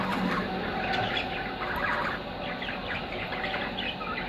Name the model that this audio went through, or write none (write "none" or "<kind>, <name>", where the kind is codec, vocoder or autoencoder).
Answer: none